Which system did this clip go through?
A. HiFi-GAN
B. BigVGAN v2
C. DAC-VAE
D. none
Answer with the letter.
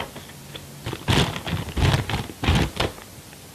D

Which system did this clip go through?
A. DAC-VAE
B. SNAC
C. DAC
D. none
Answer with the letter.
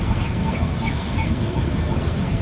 B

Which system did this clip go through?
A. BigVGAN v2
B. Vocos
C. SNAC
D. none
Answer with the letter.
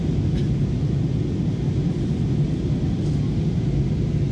D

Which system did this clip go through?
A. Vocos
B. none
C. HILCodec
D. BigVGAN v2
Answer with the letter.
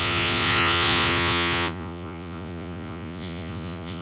A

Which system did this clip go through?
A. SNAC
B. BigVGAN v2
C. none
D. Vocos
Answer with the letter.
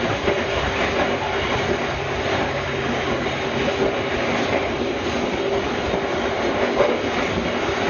C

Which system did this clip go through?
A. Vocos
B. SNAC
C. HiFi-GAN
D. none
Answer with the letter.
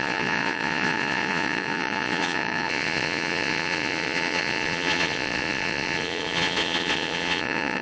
A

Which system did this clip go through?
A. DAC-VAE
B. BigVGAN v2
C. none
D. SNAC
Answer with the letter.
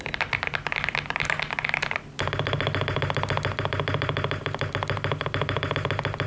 C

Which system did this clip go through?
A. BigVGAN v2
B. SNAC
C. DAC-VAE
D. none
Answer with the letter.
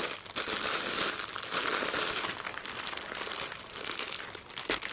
D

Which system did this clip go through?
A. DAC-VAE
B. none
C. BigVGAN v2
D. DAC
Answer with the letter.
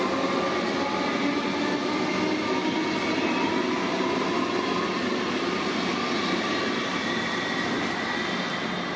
B